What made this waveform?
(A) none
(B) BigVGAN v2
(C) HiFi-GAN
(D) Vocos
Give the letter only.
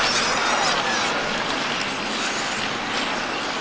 A